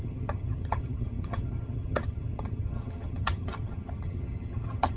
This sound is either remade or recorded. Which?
remade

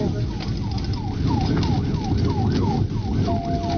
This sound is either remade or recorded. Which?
recorded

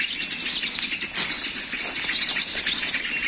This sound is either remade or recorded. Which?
recorded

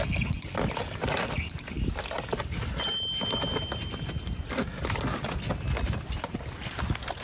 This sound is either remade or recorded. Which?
recorded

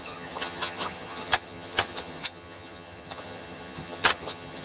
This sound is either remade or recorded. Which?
remade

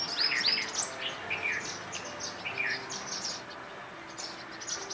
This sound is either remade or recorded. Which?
recorded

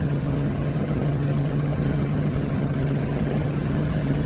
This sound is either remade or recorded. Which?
remade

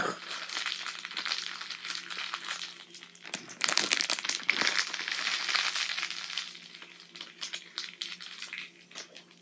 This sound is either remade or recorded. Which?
recorded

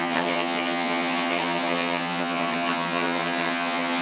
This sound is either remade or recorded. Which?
remade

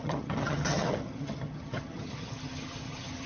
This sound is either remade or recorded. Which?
remade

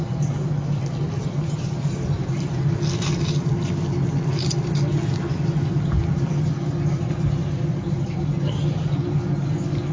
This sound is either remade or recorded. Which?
recorded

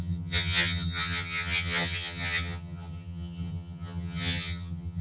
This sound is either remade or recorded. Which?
remade